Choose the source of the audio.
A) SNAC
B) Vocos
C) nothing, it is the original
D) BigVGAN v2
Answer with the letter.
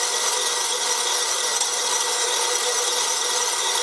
C